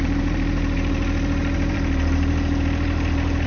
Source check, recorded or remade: remade